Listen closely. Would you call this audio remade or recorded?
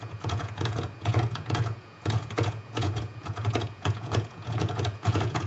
remade